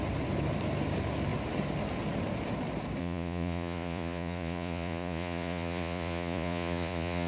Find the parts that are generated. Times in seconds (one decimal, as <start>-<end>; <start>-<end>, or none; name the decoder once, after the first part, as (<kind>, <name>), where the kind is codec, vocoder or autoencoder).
3.0-7.3 (vocoder, Vocos)